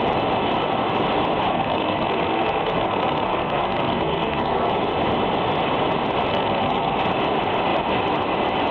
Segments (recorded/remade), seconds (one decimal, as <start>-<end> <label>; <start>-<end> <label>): 0.0-1.5 recorded; 1.5-4.7 remade; 4.7-6.3 recorded; 6.3-7.0 remade; 7.0-8.7 recorded